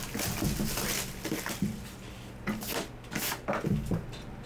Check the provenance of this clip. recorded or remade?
recorded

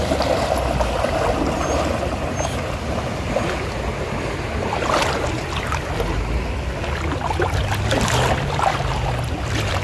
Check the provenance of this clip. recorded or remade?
recorded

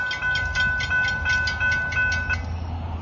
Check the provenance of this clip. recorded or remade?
recorded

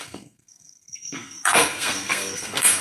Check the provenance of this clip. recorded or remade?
remade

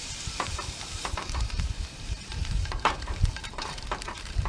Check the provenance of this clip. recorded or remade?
remade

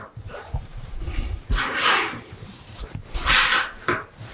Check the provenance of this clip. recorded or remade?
remade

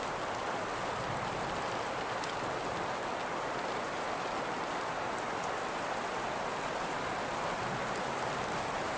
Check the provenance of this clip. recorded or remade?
recorded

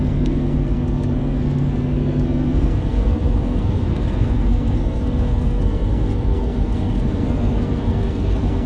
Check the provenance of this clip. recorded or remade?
remade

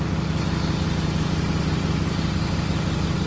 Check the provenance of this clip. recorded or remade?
recorded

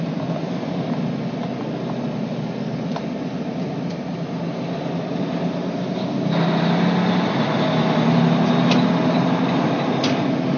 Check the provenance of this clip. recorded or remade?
recorded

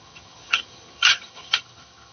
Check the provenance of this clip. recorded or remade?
remade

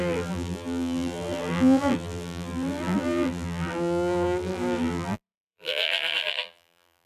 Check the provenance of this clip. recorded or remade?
remade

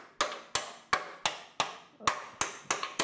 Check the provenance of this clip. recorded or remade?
recorded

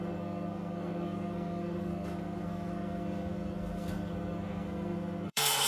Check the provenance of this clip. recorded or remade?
remade